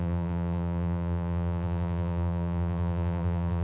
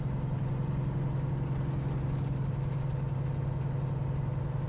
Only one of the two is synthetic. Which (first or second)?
first